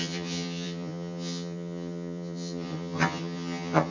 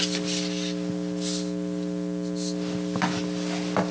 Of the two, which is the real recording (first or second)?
second